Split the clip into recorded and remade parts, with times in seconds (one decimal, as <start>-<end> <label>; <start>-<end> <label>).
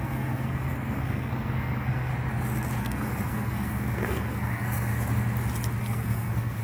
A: 0.0-2.1 remade; 2.1-2.8 recorded; 2.8-4.9 remade; 4.9-5.8 recorded; 5.8-6.6 remade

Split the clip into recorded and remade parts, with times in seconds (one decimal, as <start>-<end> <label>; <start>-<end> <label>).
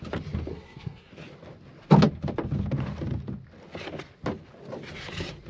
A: 0.0-0.5 recorded; 0.5-1.1 remade; 1.1-5.5 recorded